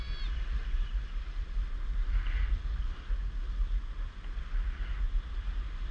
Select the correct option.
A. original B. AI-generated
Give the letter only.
A